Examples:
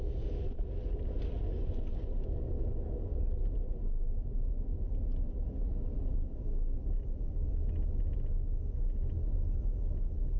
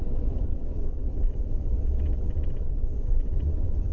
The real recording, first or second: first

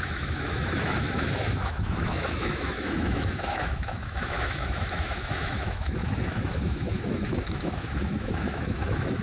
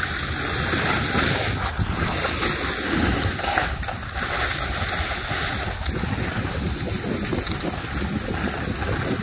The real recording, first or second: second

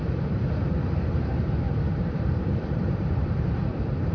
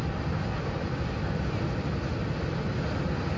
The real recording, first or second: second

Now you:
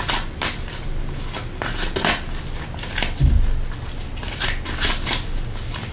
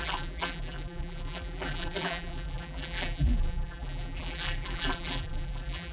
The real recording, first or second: first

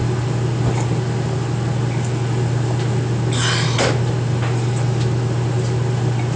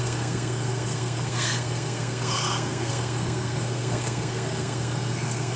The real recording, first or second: first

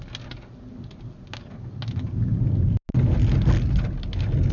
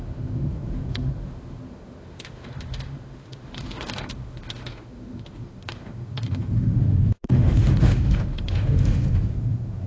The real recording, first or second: first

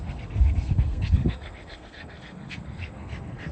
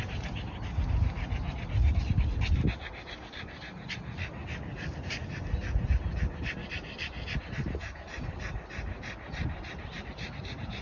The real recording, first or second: second